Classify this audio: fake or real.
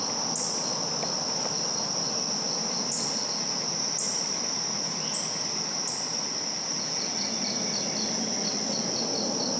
real